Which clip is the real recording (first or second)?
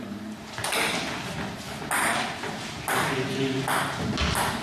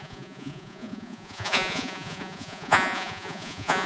first